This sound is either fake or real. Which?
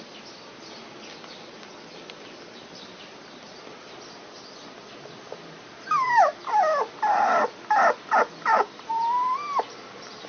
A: real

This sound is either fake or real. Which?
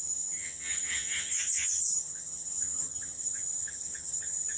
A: fake